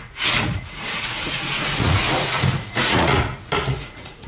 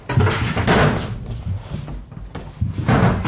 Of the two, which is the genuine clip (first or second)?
second